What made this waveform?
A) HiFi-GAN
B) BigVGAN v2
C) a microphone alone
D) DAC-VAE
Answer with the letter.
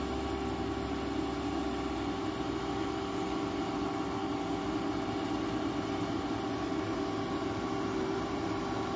C